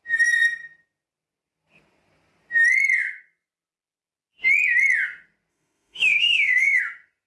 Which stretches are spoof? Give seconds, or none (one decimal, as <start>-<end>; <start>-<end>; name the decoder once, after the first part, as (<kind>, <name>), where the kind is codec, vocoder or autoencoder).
5.5-6.8 (autoencoder, DAC-VAE)

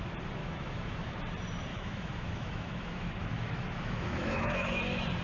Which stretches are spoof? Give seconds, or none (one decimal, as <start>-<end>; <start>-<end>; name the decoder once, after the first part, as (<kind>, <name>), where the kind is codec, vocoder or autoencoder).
0.4-1.2 (autoencoder, DAC-VAE); 1.7-4.8

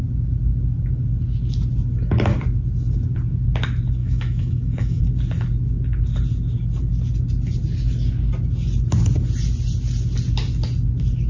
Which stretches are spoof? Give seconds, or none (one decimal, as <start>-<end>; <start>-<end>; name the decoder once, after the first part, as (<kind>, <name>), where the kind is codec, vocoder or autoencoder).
4.0-5.0 (autoencoder, DAC-VAE)

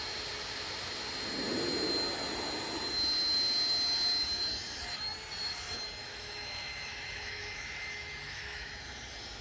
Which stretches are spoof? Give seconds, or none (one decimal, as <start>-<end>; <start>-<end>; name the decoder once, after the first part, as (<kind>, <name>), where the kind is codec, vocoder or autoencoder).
6.0-8.7 (autoencoder, DAC-VAE)

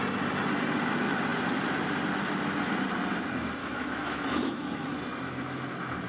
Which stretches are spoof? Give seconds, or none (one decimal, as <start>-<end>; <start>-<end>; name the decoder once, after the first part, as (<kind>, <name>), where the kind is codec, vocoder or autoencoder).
3.6-4.9 (autoencoder, DAC-VAE)

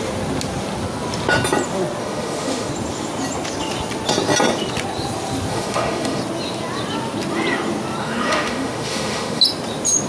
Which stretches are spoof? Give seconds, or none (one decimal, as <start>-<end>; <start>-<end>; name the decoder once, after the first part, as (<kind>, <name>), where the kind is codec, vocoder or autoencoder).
2.0-2.7 (autoencoder, DAC-VAE); 5.5-6.2; 8.0-9.4